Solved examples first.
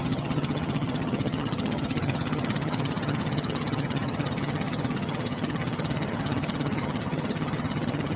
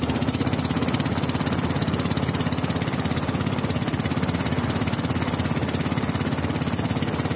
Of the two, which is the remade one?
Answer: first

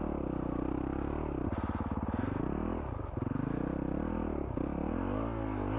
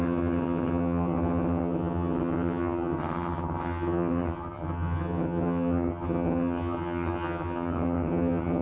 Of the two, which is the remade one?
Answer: second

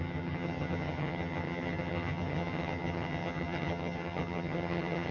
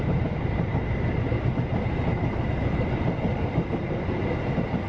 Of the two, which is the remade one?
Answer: first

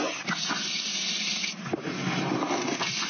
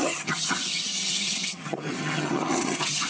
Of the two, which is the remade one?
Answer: second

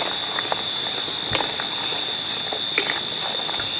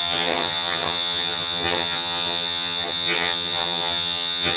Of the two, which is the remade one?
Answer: second